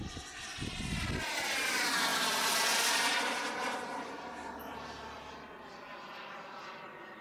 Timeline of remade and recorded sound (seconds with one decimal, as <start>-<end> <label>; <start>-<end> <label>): 0.0-7.2 recorded